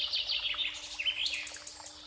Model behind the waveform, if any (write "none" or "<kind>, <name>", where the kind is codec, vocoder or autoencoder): none